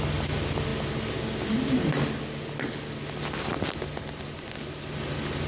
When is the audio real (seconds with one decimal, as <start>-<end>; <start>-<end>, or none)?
0.0-5.5